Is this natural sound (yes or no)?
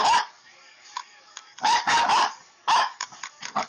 no